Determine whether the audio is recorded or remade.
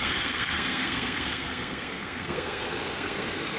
remade